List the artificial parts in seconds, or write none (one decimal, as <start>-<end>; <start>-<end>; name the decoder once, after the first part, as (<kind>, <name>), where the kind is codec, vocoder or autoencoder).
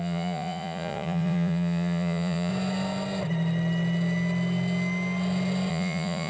0.0-2.5 (vocoder, Vocos); 5.7-6.3